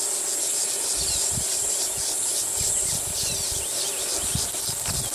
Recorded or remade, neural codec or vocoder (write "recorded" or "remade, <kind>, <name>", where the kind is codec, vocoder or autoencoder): recorded